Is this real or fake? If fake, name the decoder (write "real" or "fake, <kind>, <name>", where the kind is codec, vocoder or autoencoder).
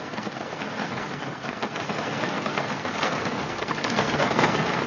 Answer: fake, codec, SNAC